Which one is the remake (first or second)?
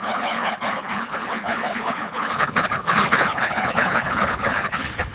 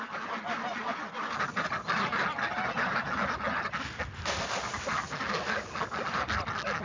first